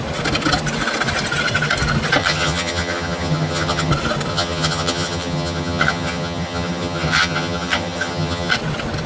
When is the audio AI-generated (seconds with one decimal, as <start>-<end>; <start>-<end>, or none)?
2.2-3.9; 4.3-8.5